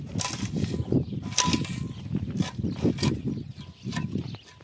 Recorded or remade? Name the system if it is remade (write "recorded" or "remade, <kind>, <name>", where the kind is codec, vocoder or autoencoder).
recorded